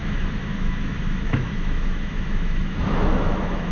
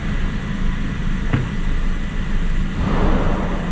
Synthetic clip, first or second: first